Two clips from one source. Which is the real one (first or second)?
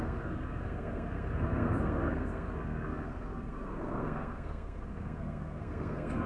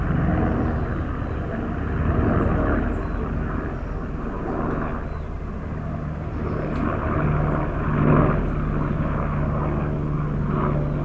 second